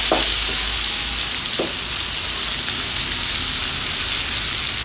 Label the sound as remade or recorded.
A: recorded